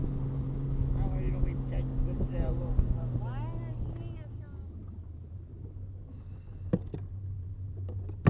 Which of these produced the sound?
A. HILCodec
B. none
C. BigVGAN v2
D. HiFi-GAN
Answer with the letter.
B